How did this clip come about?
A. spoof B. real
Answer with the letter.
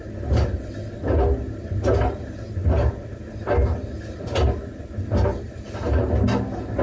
B